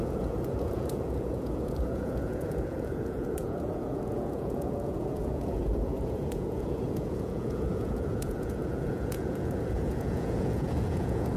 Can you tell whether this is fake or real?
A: fake